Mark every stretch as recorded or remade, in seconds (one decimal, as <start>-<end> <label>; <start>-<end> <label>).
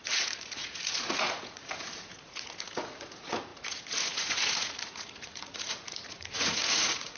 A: 0.0-7.2 remade